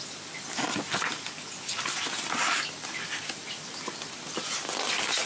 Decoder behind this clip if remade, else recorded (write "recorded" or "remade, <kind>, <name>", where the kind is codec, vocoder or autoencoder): recorded